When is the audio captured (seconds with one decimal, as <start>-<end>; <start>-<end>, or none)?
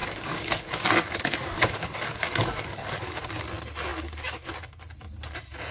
3.4-3.9; 4.5-5.7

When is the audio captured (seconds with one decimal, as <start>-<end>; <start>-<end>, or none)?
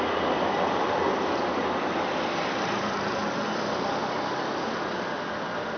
0.0-5.8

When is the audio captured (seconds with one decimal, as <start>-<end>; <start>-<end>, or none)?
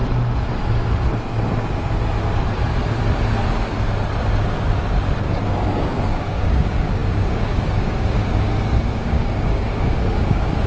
0.0-5.2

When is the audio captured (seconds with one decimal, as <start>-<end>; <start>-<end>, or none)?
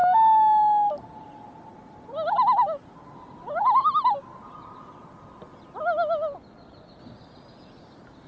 0.9-8.3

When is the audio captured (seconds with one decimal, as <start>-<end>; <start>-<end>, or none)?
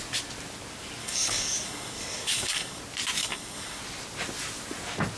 0.0-1.0; 2.8-3.2; 3.8-5.2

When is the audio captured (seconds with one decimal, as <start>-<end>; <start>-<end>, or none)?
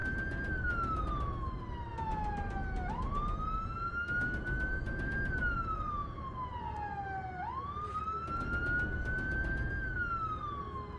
0.0-11.0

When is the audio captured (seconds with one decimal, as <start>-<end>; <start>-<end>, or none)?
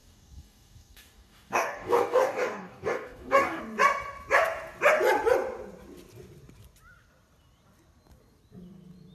3.6-9.1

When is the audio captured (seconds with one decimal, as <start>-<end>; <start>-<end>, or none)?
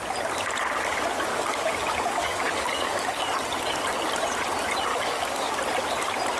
0.0-1.3; 3.2-4.9; 5.5-6.4